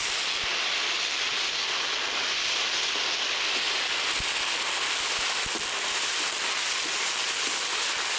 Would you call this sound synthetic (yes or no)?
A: no